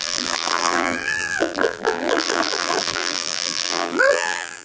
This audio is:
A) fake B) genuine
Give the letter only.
A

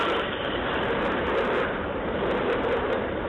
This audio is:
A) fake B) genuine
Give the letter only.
A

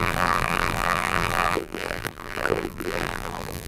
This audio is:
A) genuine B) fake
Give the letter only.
B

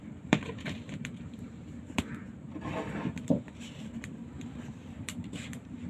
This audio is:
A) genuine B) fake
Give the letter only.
B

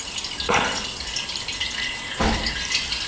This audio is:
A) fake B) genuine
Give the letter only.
B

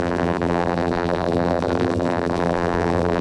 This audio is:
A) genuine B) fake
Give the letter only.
B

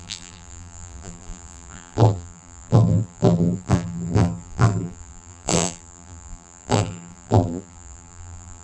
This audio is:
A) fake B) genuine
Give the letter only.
A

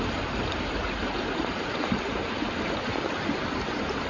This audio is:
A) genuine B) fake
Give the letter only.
B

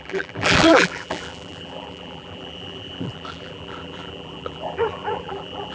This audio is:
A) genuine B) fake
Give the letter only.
B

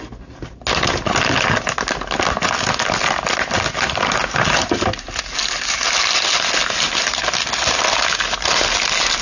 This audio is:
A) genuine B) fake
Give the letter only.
A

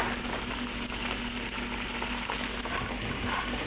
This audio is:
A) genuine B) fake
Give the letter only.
A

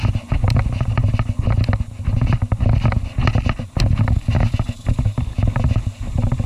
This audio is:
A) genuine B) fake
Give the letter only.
A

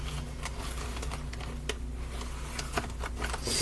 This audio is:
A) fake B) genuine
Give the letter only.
B